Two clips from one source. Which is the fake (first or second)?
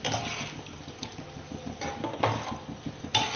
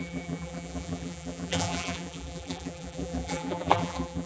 second